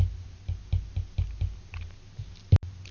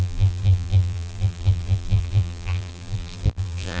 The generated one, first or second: second